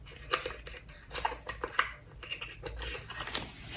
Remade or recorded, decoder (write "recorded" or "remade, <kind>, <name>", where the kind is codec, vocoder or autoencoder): recorded